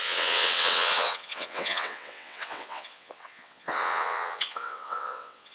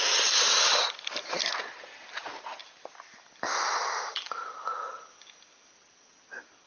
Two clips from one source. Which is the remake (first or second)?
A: first